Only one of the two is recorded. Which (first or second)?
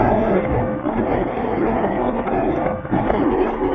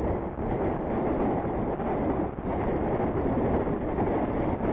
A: second